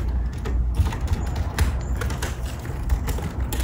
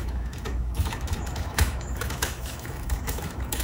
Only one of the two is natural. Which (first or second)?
first